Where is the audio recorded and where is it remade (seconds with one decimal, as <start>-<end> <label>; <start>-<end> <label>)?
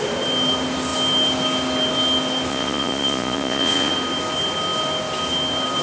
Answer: 0.0-2.5 recorded; 2.5-3.9 remade; 3.9-5.8 recorded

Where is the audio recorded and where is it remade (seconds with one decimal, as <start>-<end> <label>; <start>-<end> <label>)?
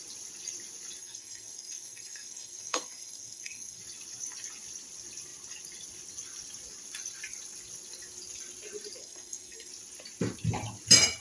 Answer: 0.0-1.0 recorded; 1.0-3.8 remade; 3.8-9.0 recorded; 9.0-9.7 remade; 9.7-11.2 recorded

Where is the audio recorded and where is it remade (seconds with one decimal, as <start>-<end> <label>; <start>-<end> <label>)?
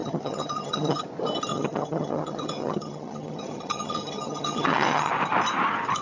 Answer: 0.0-1.0 remade; 1.0-1.5 recorded; 1.5-5.1 remade; 5.1-6.0 recorded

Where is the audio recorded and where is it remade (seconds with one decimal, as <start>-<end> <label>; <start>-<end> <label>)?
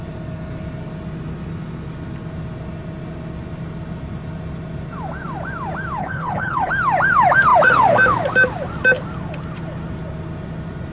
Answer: 0.0-6.0 recorded; 6.0-6.7 remade; 6.7-10.9 recorded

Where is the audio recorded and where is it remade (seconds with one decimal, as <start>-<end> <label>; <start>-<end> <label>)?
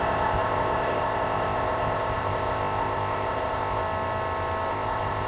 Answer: 0.0-3.8 remade; 3.8-4.7 recorded; 4.7-5.3 remade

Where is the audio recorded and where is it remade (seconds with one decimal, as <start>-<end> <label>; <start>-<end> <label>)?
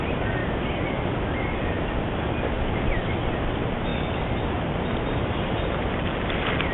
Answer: 0.0-0.4 remade; 0.4-3.3 recorded; 3.3-3.9 remade; 3.9-4.5 recorded; 4.5-6.7 remade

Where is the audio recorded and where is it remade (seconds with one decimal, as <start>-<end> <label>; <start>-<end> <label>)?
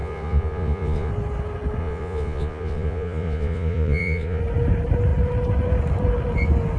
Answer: 0.0-1.1 remade; 1.1-1.8 recorded; 1.8-4.4 remade; 4.4-6.8 recorded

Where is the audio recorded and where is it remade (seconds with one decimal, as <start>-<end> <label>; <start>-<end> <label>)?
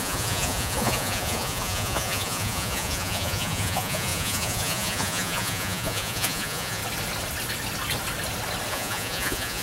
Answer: 0.0-6.8 remade; 6.8-8.7 recorded; 8.7-9.6 remade